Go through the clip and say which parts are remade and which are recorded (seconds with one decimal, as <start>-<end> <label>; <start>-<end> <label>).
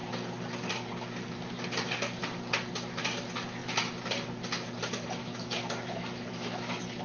0.0-5.2 recorded; 5.2-7.0 remade